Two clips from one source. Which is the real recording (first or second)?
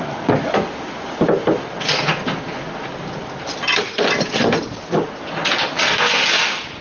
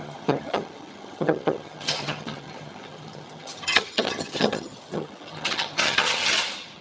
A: first